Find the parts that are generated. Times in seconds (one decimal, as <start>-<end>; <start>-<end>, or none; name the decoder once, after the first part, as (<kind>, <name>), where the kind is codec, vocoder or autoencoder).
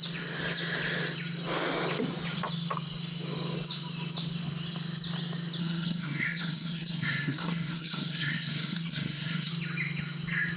5.6-9.5 (codec, SNAC)